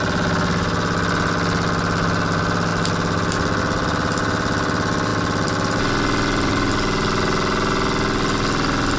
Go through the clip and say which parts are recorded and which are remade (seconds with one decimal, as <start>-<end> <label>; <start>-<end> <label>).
0.0-2.7 recorded; 2.7-3.6 remade; 3.6-5.1 recorded; 5.1-6.7 remade; 6.7-9.0 recorded